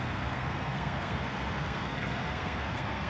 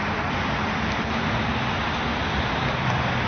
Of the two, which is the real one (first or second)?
second